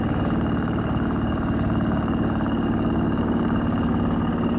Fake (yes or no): yes